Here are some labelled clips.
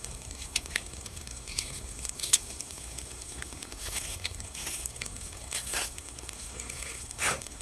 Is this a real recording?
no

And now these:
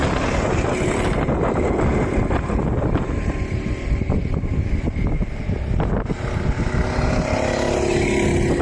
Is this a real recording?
yes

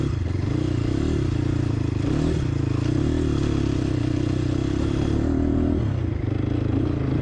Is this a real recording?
yes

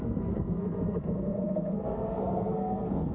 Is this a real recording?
no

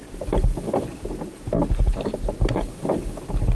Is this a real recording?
yes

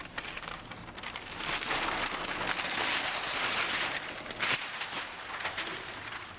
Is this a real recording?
yes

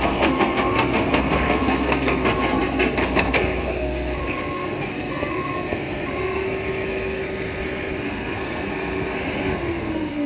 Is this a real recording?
no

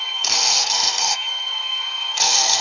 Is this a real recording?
no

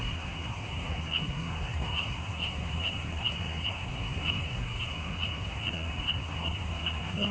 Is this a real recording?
no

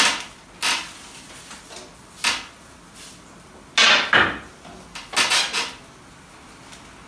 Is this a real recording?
yes